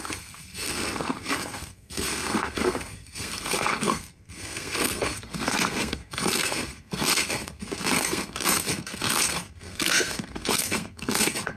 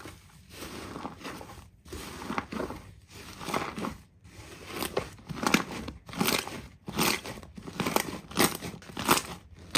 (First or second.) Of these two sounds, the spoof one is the first